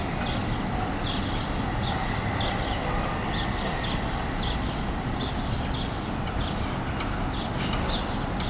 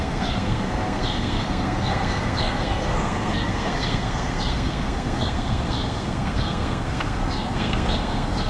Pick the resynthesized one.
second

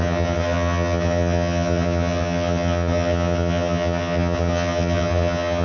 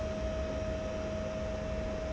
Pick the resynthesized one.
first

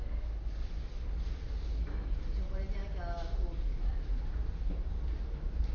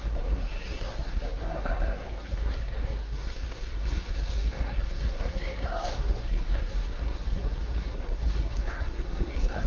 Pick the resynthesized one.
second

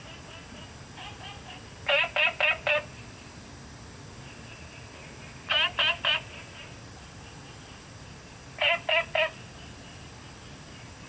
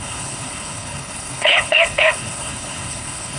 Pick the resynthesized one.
second